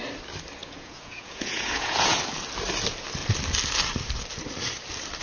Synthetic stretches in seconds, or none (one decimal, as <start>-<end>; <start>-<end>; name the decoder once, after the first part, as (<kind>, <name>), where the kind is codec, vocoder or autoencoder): 0.6-2.2 (vocoder, Vocos)

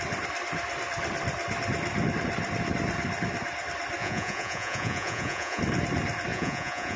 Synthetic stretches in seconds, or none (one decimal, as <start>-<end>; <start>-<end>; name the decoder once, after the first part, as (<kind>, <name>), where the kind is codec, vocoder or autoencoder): 4.0-5.6 (vocoder, Vocos); 6.3-7.0

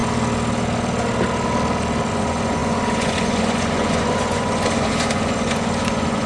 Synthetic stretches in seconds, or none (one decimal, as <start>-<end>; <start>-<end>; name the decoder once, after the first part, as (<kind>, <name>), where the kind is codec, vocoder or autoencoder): 2.1-6.3 (vocoder, Vocos)

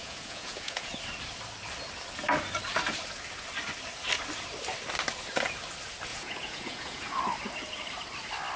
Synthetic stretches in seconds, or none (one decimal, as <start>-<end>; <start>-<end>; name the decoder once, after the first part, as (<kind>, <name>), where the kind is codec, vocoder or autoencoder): 0.0-0.9 (vocoder, Vocos); 6.1-7.2

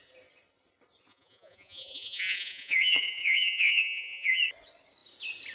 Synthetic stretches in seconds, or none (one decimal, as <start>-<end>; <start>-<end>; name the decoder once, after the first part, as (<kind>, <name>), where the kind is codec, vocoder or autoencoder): 1.1-4.4 (vocoder, Vocos)

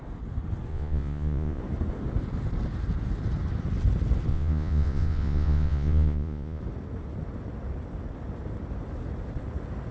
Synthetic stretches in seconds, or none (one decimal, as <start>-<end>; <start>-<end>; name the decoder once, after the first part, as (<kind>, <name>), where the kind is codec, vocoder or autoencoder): 0.7-1.6 (vocoder, Vocos); 4.3-6.6

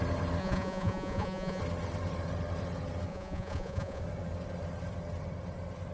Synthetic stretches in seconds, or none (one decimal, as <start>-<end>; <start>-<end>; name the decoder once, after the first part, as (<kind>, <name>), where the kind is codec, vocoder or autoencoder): 0.4-1.6 (vocoder, Vocos); 3.1-4.0